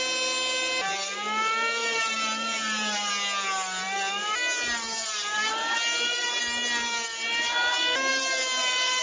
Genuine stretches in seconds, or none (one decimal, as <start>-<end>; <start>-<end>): 0.0-1.8; 3.1-5.0; 6.4-8.1